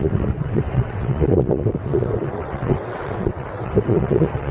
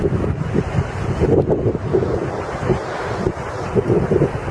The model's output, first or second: first